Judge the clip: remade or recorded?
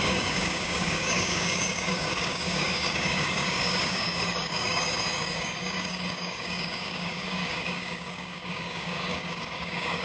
remade